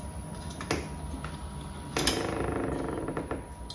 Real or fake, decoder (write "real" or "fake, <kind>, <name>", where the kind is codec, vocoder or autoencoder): real